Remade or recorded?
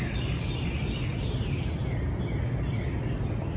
recorded